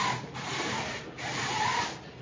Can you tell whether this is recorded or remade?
recorded